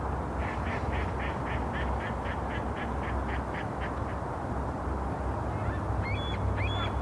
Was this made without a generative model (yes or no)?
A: yes